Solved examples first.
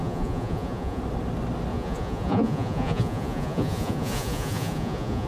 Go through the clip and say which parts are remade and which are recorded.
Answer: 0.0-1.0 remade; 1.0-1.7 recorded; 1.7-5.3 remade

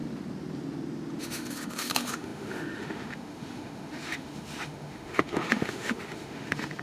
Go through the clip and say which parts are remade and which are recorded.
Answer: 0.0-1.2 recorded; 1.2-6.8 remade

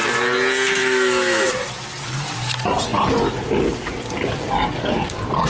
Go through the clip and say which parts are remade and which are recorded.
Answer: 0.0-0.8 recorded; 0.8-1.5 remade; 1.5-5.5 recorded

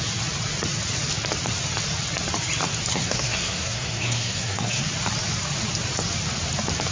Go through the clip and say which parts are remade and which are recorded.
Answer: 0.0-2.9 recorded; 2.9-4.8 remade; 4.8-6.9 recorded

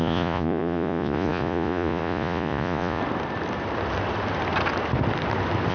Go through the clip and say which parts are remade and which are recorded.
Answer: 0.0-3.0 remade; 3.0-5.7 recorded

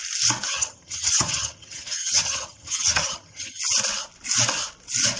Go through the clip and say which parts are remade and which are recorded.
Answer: 0.0-0.5 recorded; 0.5-3.6 remade; 3.6-5.2 recorded

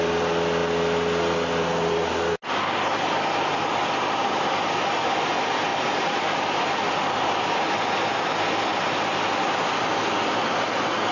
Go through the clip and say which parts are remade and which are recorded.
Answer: 0.0-5.7 recorded; 5.7-7.3 remade; 7.3-8.7 recorded; 8.7-10.1 remade; 10.1-11.1 recorded

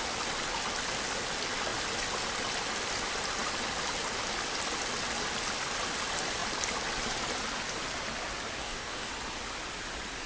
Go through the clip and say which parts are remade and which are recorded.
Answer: 0.0-8.6 recorded; 8.6-9.1 remade; 9.1-10.3 recorded